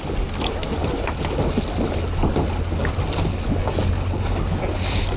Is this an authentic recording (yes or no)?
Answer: yes